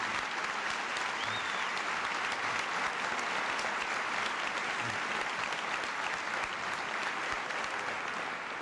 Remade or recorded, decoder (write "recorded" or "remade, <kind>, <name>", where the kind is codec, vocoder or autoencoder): recorded